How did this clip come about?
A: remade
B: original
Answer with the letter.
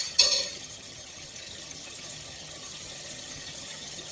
A